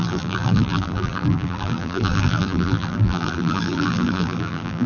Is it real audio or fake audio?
fake